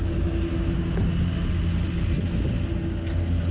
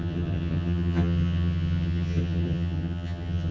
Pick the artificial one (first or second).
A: second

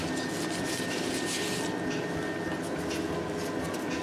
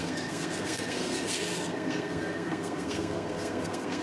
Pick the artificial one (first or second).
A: second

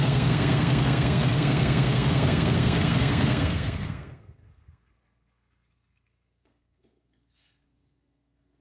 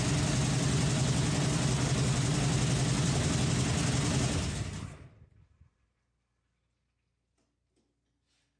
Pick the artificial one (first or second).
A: first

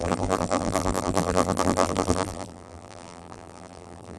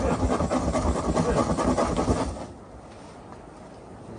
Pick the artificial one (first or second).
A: first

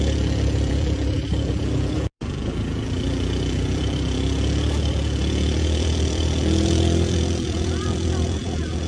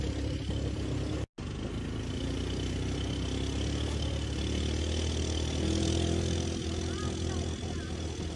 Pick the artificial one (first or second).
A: first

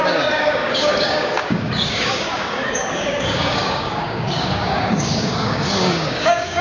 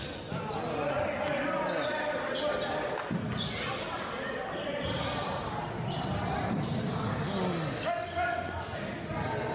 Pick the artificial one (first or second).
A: first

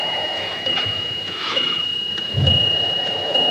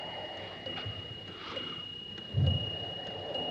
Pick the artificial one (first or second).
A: first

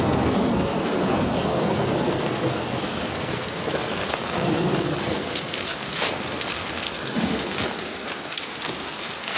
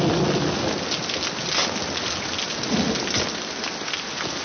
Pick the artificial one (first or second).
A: first